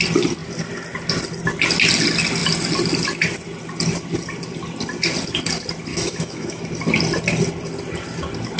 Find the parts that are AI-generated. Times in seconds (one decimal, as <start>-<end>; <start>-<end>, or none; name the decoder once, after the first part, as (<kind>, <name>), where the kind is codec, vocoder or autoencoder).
5.9-6.6 (autoencoder, DAC-VAE)